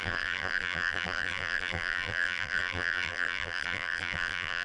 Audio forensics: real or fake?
fake